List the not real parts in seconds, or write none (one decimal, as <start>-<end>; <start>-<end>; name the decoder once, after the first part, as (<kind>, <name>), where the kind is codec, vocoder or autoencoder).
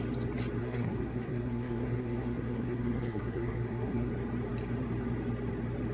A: 0.6-4.1 (codec, SNAC)